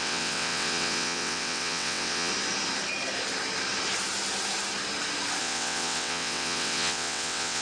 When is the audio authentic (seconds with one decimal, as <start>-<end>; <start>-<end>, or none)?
2.3-5.4